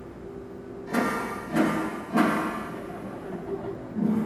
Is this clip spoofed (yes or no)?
no